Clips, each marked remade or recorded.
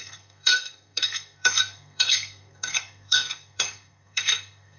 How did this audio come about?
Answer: remade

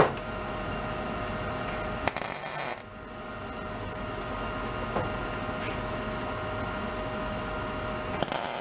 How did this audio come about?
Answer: recorded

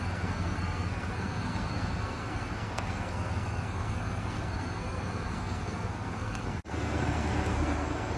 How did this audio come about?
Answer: remade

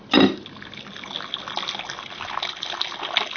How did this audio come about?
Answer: recorded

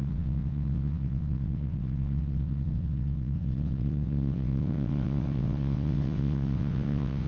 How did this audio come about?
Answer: remade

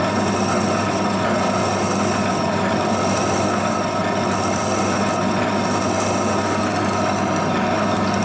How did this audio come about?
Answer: recorded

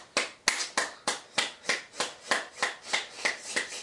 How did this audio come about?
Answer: recorded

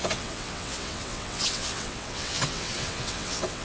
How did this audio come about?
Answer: remade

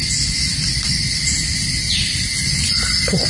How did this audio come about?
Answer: remade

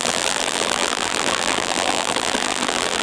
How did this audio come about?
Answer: remade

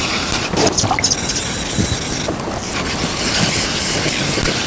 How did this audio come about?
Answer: recorded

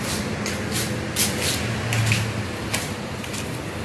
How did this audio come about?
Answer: recorded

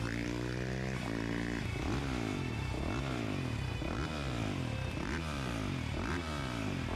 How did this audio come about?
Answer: recorded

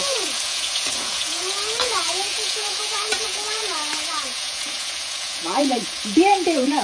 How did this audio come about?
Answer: remade